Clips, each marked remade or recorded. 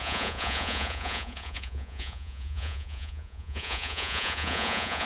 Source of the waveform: remade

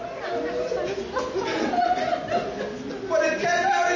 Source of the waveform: recorded